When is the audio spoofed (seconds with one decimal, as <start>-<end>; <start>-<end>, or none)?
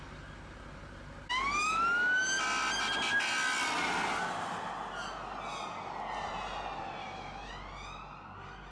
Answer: 7.0-7.5